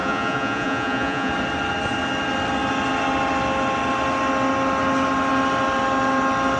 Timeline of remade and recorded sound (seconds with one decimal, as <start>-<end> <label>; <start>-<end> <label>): 0.0-1.3 remade; 1.3-6.6 recorded